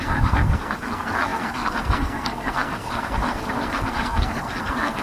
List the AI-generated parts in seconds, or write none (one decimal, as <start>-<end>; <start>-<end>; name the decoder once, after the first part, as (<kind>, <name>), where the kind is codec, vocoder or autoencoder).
0.0-5.0 (codec, SNAC)